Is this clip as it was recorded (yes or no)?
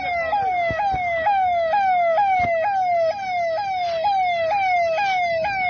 yes